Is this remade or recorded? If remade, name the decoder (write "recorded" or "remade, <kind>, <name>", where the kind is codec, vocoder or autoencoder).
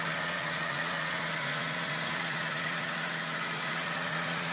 remade, vocoder, Vocos